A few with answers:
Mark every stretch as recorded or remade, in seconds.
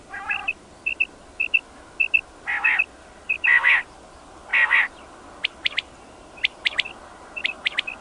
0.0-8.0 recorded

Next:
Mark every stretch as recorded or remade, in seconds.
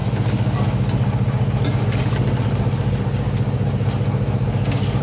0.0-5.0 recorded